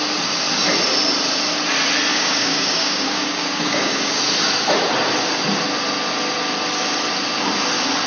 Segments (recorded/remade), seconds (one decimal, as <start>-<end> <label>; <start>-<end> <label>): 0.0-2.1 recorded; 2.1-4.2 remade; 4.2-8.1 recorded